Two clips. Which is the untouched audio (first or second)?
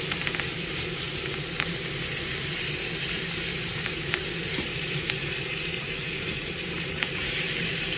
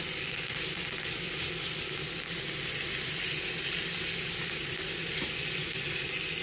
second